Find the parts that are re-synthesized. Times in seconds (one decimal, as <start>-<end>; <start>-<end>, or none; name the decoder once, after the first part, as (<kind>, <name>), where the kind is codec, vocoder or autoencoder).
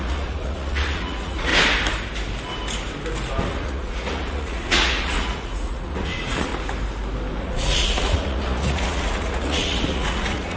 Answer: 0.0-1.5 (vocoder, Vocos); 3.4-6.5; 7.4-10.6